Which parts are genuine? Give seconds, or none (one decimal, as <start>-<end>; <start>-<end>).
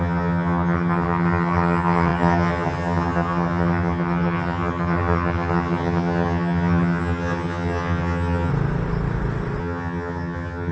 8.5-9.6